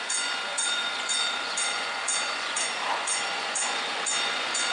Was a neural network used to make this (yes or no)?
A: yes